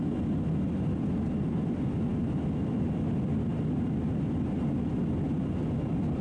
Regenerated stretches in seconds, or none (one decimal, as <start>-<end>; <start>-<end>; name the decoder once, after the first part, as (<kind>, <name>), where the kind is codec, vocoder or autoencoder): none